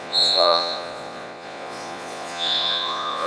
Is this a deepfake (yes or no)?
yes